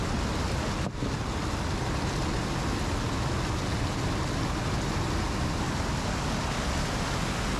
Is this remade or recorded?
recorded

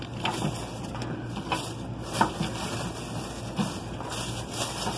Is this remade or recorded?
recorded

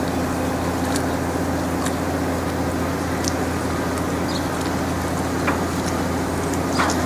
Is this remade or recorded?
recorded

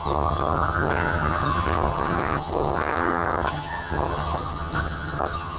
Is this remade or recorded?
remade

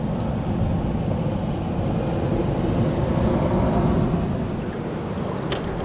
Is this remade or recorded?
recorded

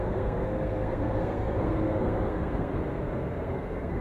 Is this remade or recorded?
remade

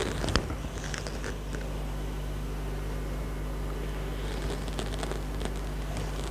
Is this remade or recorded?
recorded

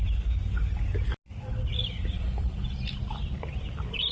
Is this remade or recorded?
recorded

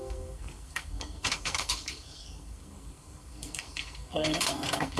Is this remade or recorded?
remade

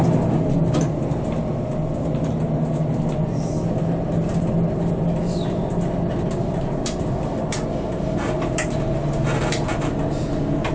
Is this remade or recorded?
recorded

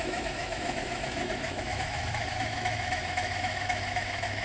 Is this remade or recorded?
remade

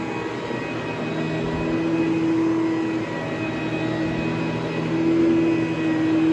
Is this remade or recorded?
recorded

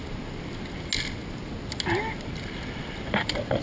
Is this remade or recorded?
recorded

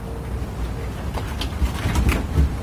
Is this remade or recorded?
recorded